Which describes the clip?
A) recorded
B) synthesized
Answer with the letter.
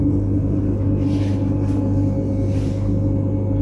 A